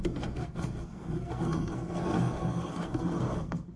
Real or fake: fake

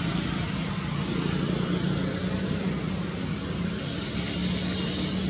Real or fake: real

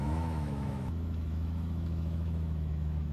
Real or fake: fake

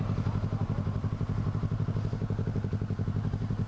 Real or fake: real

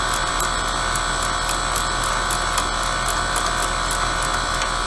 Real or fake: real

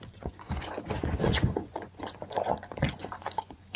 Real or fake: fake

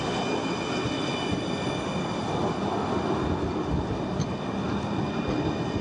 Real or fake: real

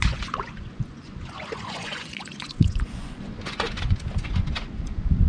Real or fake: fake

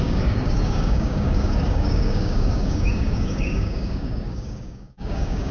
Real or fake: fake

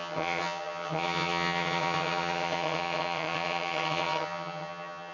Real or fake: fake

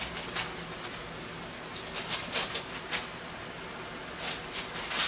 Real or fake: real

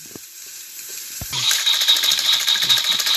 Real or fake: fake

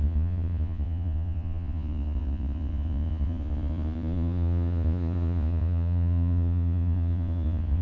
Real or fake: fake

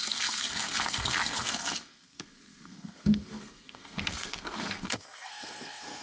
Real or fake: fake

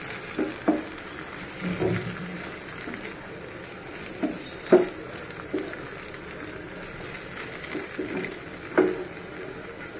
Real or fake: real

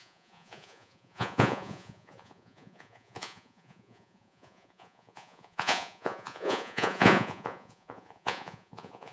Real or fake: fake